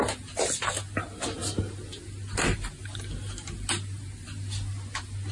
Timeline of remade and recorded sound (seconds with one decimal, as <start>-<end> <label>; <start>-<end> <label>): 0.0-5.3 recorded